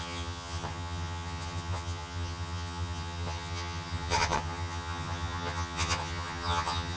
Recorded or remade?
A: remade